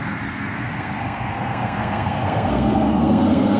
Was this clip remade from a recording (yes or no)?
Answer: yes